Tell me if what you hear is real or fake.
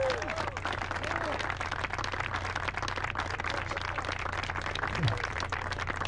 real